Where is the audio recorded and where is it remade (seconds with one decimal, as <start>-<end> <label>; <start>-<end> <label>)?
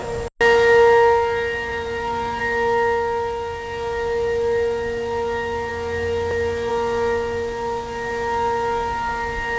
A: 0.0-1.7 recorded; 1.7-2.4 remade; 2.4-9.6 recorded